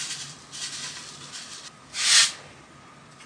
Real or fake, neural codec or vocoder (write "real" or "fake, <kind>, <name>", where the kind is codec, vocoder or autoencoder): real